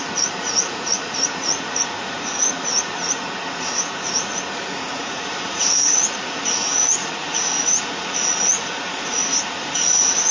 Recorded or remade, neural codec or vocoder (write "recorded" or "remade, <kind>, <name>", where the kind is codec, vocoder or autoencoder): remade, vocoder, Vocos